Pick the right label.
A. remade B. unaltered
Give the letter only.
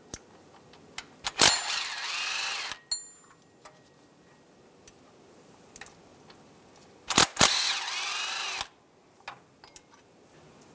B